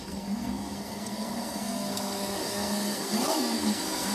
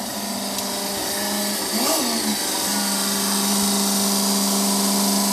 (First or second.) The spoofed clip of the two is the first